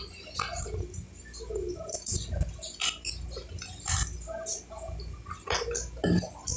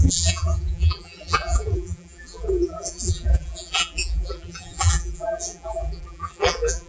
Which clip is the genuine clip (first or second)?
first